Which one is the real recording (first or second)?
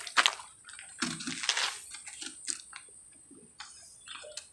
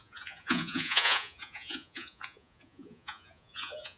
first